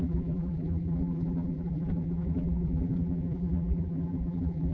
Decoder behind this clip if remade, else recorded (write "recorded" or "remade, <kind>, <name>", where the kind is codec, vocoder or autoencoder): remade, vocoder, BigVGAN v2